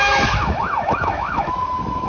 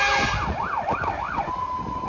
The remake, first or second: first